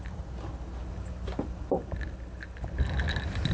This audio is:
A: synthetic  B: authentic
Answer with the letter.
B